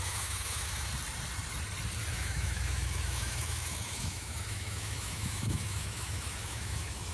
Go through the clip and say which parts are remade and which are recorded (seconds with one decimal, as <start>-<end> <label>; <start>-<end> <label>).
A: 0.0-0.9 remade; 0.9-2.1 recorded; 2.1-7.1 remade